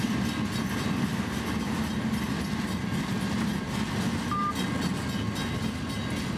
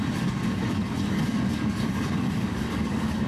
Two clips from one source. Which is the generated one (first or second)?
second